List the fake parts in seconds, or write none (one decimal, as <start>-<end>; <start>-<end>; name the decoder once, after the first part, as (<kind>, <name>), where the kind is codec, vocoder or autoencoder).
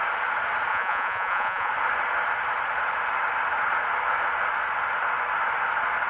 0.7-1.7 (vocoder, Vocos)